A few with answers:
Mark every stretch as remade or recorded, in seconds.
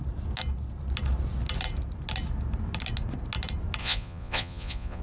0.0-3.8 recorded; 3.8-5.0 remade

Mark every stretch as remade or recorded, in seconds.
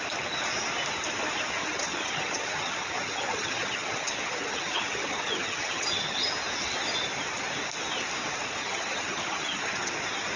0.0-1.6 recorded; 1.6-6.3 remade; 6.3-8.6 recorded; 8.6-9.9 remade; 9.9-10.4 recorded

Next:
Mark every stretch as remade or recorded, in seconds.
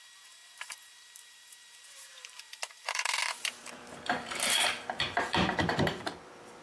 0.0-6.6 remade